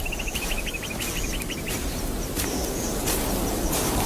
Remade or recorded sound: recorded